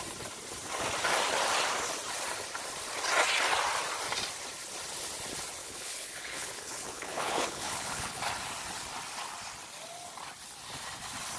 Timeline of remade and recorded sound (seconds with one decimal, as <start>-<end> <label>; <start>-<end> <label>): 0.0-5.6 recorded; 5.6-8.2 remade; 8.2-11.4 recorded